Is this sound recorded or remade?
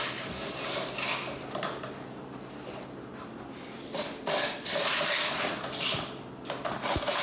recorded